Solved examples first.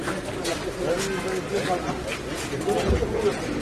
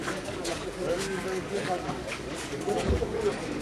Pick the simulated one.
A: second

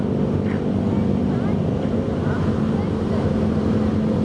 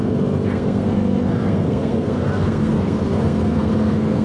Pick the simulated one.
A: second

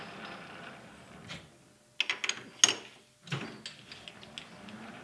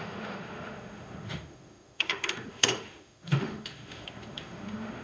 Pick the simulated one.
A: second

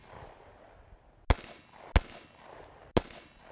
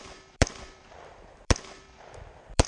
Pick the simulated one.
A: second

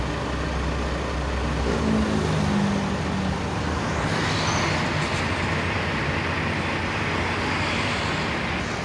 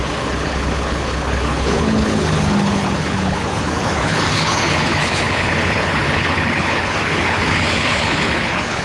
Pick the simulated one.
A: second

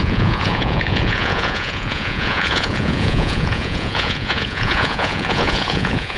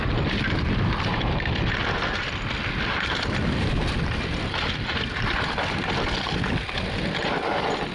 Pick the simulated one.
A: first